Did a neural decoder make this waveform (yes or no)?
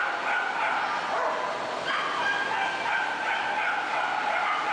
no